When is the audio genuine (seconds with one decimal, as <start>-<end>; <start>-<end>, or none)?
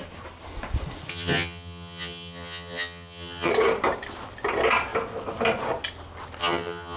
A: 0.0-1.1; 3.5-6.4